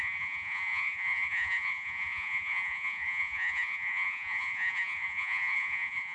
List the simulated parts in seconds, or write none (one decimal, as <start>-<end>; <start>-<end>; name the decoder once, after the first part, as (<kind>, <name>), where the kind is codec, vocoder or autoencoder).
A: 0.0-6.1 (vocoder, Vocos)